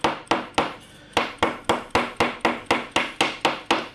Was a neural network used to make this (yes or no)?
no